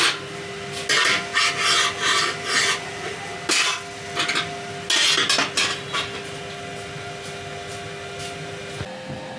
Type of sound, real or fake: real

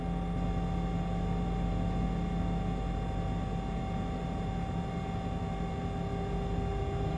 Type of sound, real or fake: real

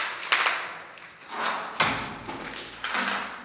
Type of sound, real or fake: real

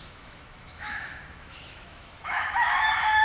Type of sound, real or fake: fake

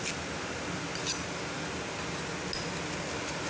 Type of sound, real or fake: real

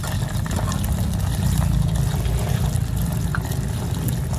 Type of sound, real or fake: real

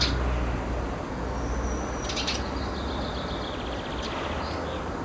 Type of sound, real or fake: real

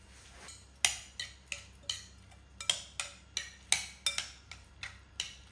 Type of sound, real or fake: real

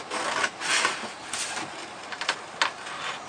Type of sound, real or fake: real